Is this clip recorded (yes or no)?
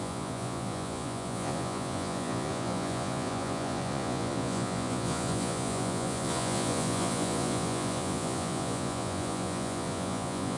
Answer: no